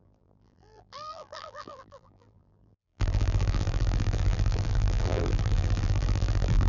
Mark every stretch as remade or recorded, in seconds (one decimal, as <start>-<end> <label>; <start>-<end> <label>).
0.0-6.7 remade